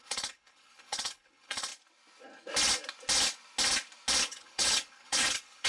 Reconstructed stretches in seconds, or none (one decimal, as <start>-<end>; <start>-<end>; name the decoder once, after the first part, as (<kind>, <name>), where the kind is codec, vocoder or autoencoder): 0.0-1.7 (codec, HILCodec); 4.2-5.7